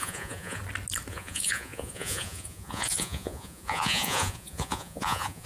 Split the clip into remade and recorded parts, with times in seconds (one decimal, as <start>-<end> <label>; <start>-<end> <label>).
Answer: 0.0-0.6 remade; 0.6-1.1 recorded; 1.1-5.5 remade